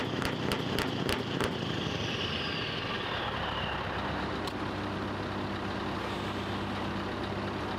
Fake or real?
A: real